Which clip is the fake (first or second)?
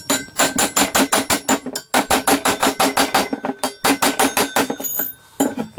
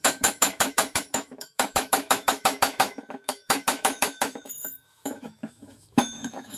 second